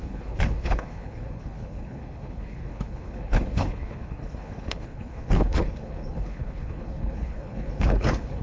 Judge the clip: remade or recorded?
remade